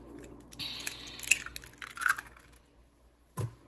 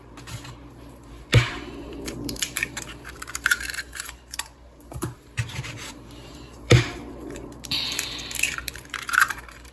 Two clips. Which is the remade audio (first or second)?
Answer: second